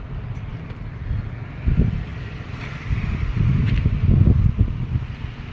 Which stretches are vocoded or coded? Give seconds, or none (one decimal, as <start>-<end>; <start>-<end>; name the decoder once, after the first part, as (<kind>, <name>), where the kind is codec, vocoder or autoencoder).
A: none